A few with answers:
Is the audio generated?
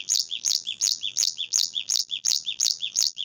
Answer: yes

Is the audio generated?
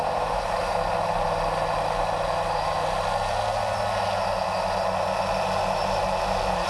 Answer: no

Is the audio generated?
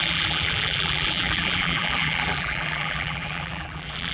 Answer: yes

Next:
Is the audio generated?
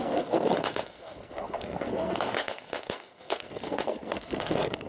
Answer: yes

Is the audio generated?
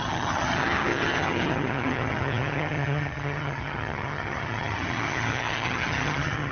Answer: yes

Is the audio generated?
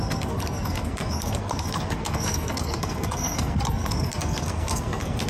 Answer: yes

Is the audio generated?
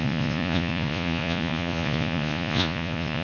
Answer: yes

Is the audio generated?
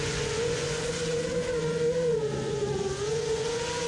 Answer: yes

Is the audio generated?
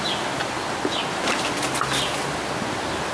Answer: no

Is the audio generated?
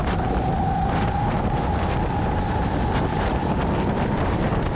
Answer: no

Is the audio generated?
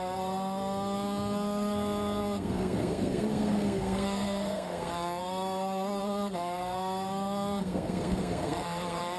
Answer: yes